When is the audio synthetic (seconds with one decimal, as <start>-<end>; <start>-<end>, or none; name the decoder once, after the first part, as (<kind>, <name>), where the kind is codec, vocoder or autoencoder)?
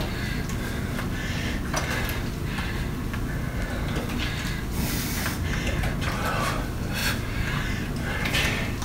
none